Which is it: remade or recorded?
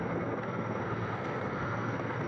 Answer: remade